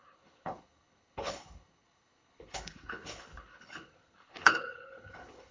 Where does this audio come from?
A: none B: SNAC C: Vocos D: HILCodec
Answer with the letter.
D